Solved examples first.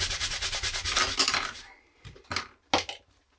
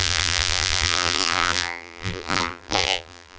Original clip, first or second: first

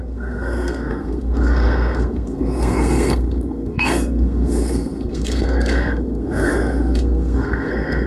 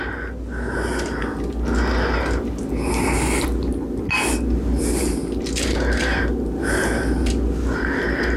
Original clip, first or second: second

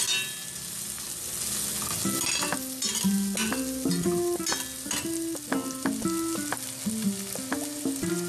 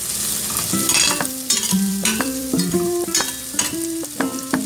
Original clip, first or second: first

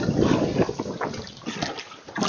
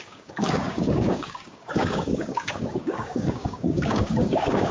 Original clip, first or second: first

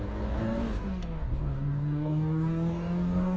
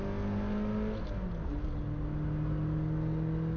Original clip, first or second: second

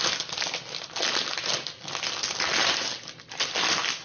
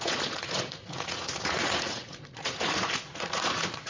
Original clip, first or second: first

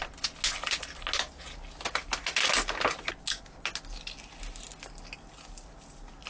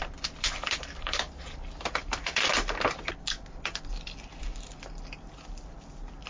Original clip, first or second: first